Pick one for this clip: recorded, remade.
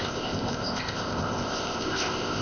remade